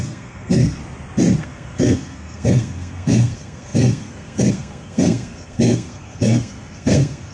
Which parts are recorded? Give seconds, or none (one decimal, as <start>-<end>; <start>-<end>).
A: 0.8-1.4